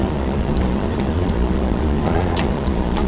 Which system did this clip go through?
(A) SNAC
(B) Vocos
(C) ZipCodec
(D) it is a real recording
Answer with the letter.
B